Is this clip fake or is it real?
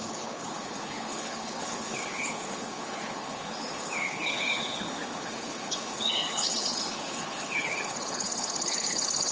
fake